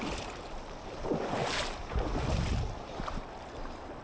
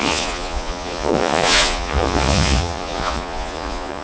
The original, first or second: first